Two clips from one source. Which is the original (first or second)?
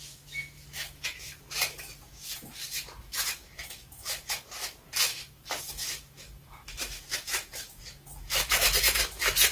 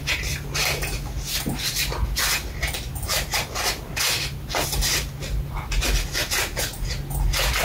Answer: second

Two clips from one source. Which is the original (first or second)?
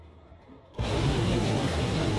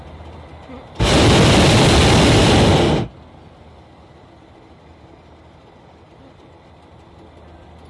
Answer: second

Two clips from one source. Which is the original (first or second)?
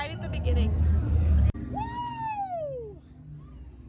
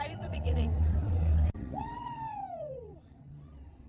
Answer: first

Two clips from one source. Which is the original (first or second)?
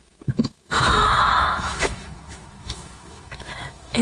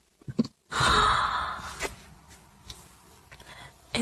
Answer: second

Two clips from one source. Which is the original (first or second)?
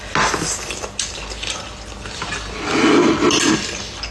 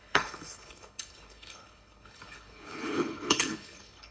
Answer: first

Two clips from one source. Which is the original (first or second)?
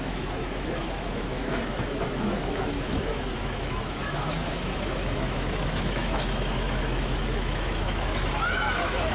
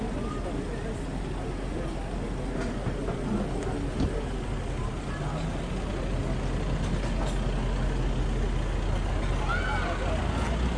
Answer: second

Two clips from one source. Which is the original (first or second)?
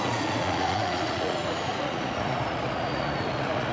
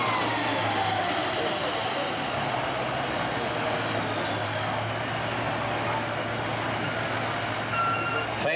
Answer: second